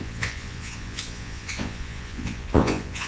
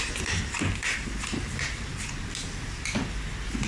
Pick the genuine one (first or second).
second